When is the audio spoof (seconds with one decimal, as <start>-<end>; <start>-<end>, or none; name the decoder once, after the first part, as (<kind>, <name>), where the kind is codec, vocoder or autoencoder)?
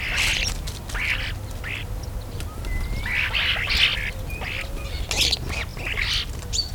5.7-6.7 (vocoder, BigVGAN v2)